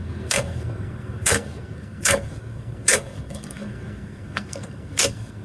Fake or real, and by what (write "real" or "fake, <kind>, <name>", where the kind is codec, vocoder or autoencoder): fake, codec, SNAC